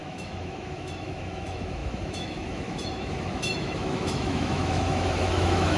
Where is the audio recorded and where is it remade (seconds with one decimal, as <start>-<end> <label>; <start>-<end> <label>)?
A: 0.0-5.8 remade